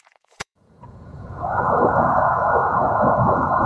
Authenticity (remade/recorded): remade